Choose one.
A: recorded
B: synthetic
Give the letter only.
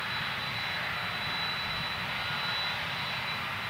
A